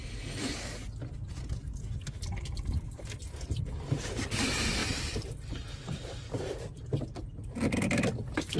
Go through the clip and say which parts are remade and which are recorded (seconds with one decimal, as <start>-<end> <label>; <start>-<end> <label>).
0.0-4.8 recorded; 4.8-6.4 remade; 6.4-8.6 recorded